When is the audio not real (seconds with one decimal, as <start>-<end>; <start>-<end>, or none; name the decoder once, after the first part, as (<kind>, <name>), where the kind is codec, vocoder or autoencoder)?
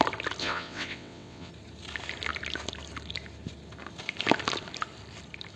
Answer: 0.4-1.5 (vocoder, WaveNeXt)